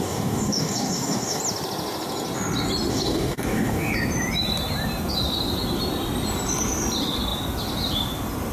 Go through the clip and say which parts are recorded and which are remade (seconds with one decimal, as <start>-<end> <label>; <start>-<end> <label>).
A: 0.0-1.4 remade; 1.4-2.9 recorded; 2.9-3.9 remade; 3.9-8.5 recorded